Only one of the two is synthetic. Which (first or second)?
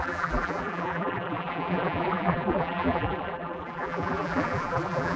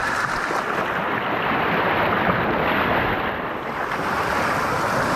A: first